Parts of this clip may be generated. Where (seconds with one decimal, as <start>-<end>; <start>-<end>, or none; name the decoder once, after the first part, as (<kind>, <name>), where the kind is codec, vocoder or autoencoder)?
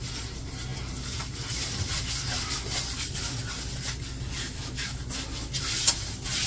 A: 4.4-5.0 (autoencoder, DAC-VAE)